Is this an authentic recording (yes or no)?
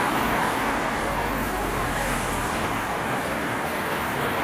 no